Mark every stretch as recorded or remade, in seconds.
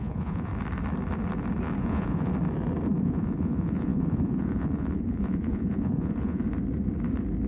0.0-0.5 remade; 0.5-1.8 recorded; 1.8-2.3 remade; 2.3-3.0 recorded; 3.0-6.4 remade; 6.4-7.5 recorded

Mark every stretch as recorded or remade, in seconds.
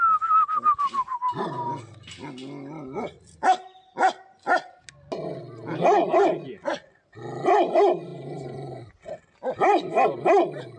0.0-10.8 recorded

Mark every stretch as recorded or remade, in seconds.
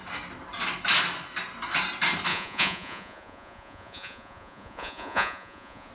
0.0-2.3 recorded; 2.3-5.9 remade